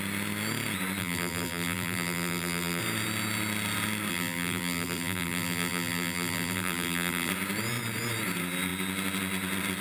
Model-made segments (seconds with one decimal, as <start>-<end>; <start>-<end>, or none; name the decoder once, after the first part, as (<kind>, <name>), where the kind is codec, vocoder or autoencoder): 1.0-2.8 (vocoder, BigVGAN v2); 4.1-7.3